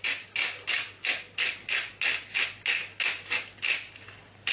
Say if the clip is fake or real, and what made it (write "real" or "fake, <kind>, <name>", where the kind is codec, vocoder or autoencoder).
real